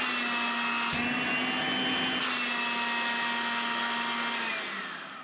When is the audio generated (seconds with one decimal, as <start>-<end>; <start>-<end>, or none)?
none